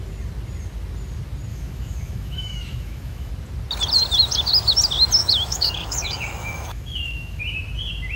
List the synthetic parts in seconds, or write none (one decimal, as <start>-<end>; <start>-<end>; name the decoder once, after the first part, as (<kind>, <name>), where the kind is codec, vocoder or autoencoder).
1.5-3.3 (autoencoder, DAC-VAE); 5.2-7.4